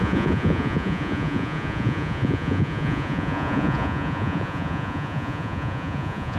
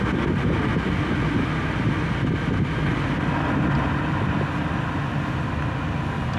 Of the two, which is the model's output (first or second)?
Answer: first